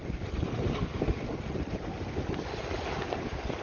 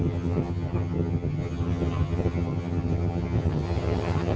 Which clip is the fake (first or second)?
second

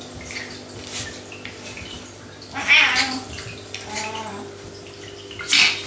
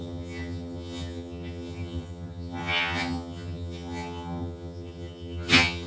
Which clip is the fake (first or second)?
second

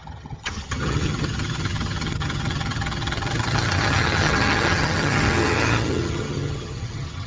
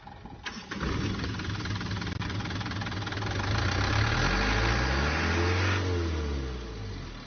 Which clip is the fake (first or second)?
first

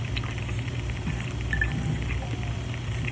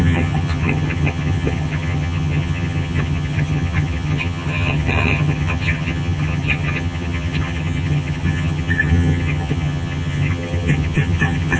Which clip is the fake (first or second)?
second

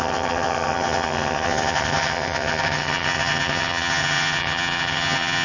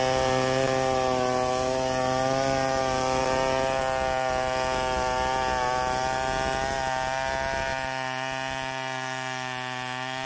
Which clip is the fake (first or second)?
first